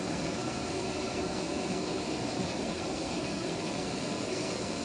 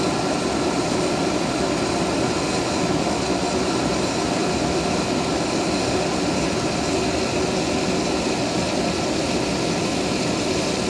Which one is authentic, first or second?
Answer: second